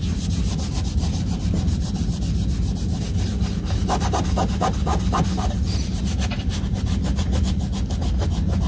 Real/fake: real